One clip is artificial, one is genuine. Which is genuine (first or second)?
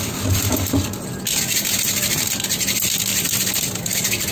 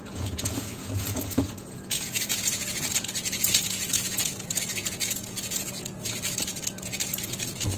first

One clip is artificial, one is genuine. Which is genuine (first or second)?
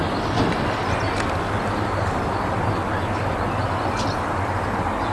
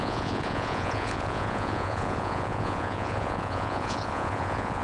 first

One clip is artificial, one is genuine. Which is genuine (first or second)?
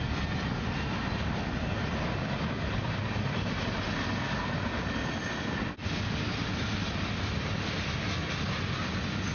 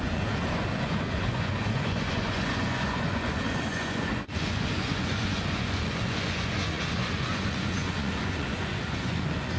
first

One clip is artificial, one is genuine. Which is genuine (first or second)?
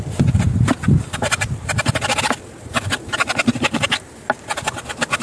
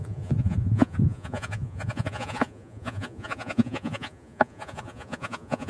first